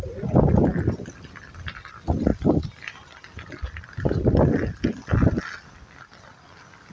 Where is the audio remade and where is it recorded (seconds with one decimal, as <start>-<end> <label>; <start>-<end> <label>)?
0.0-6.9 recorded